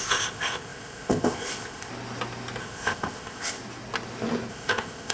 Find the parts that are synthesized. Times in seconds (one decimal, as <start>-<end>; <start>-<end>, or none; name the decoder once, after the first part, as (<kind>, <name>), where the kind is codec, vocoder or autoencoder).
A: 0.0-1.9 (codec, ZipCodec); 2.6-3.6; 4.5-5.1